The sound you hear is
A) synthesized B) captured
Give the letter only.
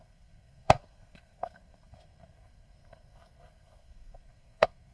A